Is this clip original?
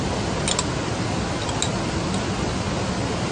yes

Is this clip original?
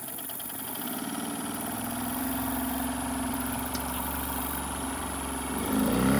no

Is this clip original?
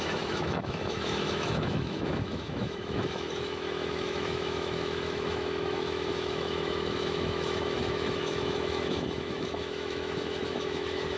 no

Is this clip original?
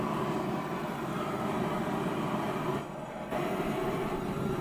yes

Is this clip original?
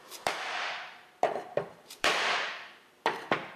no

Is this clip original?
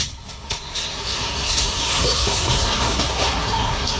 no